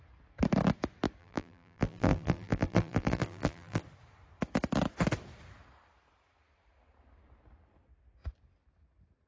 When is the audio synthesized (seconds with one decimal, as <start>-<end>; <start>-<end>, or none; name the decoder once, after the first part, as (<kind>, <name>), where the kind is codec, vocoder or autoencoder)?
1.2-3.8 (vocoder, BigVGAN v2)